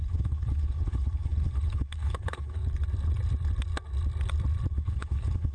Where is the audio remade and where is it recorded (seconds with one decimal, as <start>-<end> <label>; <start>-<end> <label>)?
0.0-2.6 remade; 2.6-4.7 recorded; 4.7-5.5 remade